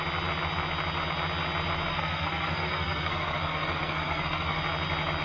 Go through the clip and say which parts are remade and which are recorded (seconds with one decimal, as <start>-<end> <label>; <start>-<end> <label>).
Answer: 0.0-1.9 recorded; 1.9-4.6 remade; 4.6-5.2 recorded